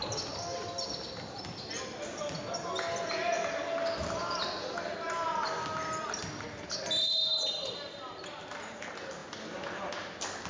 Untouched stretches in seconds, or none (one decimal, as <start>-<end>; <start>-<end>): 0.0-10.5